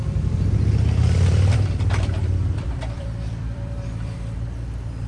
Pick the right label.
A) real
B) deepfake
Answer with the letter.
B